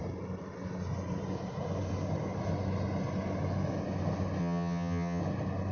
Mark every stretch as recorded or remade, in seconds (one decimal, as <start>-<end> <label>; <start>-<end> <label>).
0.0-4.4 recorded; 4.4-5.2 remade; 5.2-5.7 recorded